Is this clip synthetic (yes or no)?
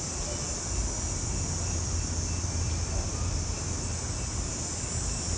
no